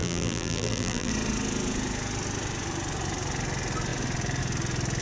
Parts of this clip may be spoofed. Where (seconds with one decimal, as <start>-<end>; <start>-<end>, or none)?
0.0-1.1